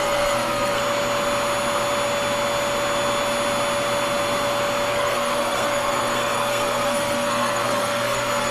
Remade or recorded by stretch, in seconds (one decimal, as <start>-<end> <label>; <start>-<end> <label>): 0.0-0.8 remade; 0.8-4.9 recorded; 4.9-8.5 remade